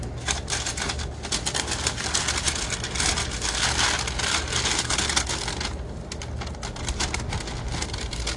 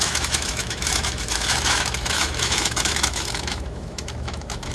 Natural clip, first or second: first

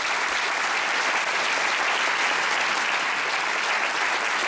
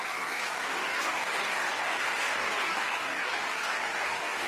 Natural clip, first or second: first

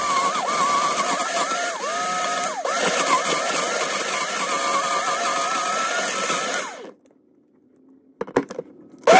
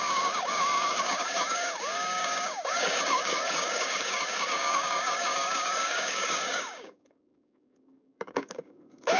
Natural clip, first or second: first